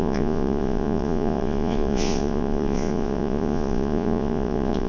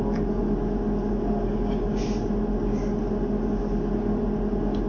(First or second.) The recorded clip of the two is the second